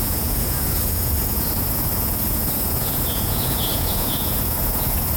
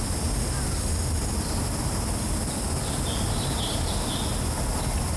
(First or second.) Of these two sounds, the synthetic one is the first